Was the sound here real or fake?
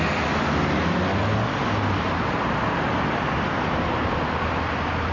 real